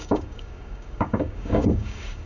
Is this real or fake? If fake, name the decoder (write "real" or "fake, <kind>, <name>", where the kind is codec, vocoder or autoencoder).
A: fake, codec, DAC